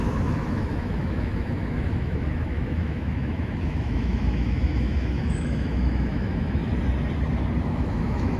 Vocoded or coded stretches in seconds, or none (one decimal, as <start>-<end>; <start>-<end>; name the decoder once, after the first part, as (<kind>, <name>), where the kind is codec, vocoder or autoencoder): 0.0-6.6 (autoencoder, DAC-VAE); 7.6-8.4

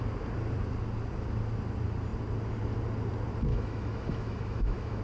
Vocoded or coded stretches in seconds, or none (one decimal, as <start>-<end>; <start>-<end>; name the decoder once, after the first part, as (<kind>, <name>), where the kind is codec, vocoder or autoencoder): 3.5-5.0 (autoencoder, DAC-VAE)

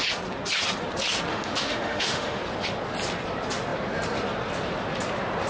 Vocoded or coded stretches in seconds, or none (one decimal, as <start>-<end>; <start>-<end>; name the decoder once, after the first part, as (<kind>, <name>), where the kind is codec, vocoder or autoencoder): 1.3-2.4 (autoencoder, DAC-VAE)

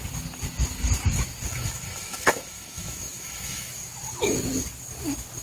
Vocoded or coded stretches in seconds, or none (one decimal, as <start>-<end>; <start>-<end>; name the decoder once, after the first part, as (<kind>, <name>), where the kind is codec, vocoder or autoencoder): 1.5-3.7 (autoencoder, DAC-VAE)

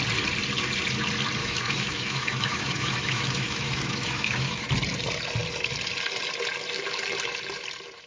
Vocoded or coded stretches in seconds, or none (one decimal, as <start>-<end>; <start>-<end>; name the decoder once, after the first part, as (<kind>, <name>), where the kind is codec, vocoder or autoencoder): 1.4-4.7 (autoencoder, DAC-VAE)

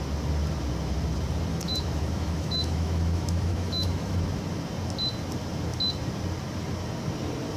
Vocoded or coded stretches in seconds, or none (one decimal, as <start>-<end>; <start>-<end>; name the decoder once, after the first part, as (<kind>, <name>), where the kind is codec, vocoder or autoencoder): 1.5-4.2 (autoencoder, DAC-VAE)

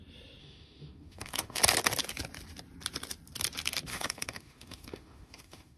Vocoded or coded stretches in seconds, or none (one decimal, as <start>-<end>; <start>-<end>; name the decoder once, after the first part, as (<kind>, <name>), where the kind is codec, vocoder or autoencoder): 0.4-1.6 (autoencoder, DAC-VAE); 3.9-5.8